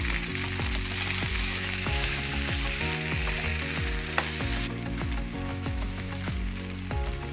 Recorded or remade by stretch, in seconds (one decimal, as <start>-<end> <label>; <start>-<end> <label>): 0.0-1.3 recorded; 1.3-2.3 remade; 2.3-5.5 recorded; 5.5-6.1 remade; 6.1-7.3 recorded